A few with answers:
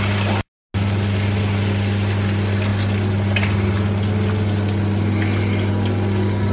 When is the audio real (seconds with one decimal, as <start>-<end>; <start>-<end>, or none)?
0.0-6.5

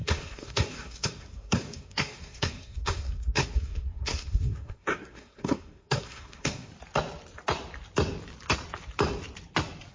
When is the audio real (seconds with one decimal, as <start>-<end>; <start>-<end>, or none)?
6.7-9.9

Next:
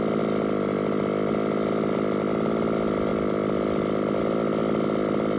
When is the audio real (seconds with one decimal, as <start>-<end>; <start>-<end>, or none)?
0.0-5.4

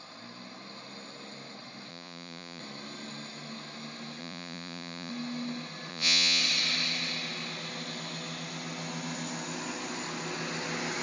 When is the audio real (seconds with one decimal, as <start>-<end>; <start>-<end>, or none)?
0.0-1.9; 2.6-4.2; 5.1-5.9; 6.4-11.0

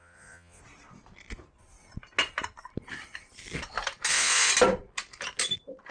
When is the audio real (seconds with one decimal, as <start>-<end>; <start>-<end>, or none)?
0.6-4.1; 4.5-5.9